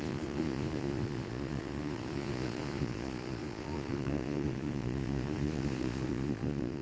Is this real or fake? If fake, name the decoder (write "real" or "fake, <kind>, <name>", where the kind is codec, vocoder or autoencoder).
fake, vocoder, Vocos